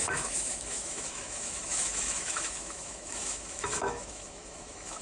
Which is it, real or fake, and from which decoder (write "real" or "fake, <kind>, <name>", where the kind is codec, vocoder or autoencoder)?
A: fake, autoencoder, DAC-VAE